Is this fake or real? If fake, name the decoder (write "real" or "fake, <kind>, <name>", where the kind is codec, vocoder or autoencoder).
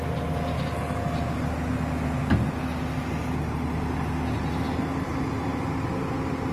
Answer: real